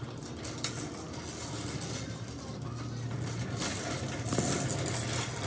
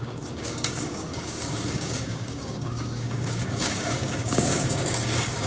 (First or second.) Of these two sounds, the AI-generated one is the second